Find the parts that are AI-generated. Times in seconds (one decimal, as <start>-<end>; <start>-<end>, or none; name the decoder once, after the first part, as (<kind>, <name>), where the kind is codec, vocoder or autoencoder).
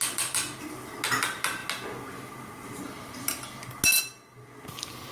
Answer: none